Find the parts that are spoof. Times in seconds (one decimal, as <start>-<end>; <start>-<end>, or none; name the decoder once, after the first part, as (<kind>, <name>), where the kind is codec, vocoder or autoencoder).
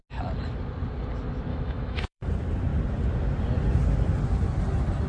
1.5-2.3 (autoencoder, DAC-VAE)